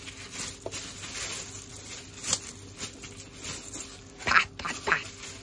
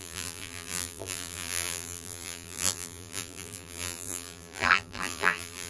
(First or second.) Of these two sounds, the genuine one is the first